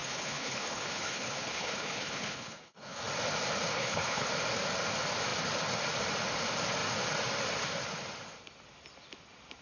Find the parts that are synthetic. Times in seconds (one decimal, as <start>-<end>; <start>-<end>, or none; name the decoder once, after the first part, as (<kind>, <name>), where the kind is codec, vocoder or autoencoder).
0.0-3.0 (codec, HILCodec); 3.7-4.3